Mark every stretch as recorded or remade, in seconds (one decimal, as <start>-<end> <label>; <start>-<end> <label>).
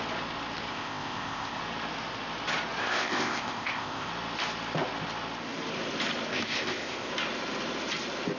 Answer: 0.0-0.7 recorded; 0.7-1.6 remade; 1.6-2.8 recorded; 2.8-4.1 remade; 4.1-6.3 recorded; 6.3-7.1 remade; 7.1-8.4 recorded